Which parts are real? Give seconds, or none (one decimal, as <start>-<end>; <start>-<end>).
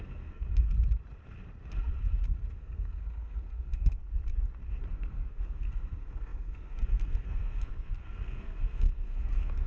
0.7-2.5; 4.0-4.9